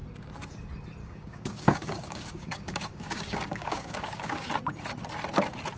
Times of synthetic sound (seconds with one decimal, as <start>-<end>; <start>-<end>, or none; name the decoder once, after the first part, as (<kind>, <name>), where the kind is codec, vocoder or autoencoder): 1.0-4.5 (codec, DAC)